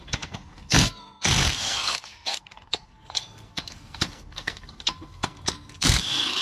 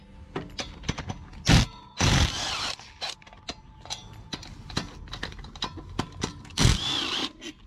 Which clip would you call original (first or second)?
second